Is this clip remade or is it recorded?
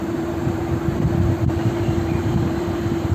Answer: remade